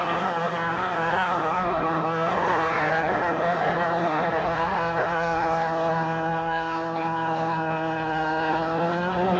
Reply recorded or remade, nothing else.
remade